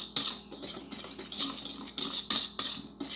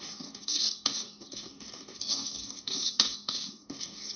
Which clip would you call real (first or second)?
first